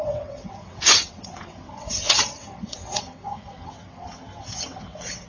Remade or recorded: remade